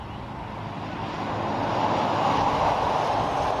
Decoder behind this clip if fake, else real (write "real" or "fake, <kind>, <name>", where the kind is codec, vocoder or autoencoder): real